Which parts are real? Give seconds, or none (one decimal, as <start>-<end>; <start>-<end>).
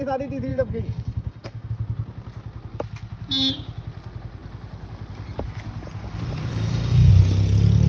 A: 0.0-0.5; 1.7-6.5; 7.1-7.9